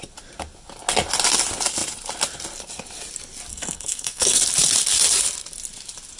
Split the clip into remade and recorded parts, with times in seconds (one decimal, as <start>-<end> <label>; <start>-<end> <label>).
0.0-3.5 recorded; 3.5-4.4 remade; 4.4-6.2 recorded